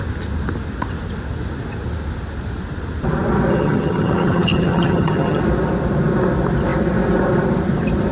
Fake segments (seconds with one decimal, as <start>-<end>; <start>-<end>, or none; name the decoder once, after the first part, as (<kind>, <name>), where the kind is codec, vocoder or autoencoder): 3.5-5.4 (vocoder, HiFi-GAN)